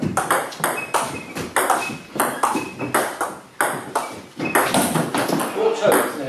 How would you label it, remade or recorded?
recorded